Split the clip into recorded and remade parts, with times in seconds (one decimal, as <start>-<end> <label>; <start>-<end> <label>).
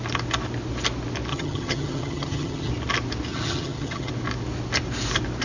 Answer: 0.0-1.3 recorded; 1.3-2.7 remade; 2.7-3.3 recorded; 3.3-4.1 remade; 4.1-5.4 recorded